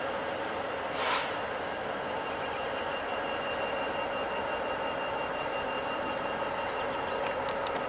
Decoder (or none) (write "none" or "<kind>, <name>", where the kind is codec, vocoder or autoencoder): vocoder, BigVGAN v2